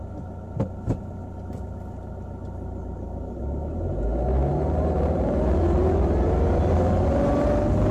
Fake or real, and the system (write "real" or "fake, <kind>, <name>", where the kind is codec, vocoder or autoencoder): real